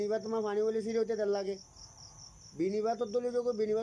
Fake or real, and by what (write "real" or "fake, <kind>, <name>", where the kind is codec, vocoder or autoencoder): real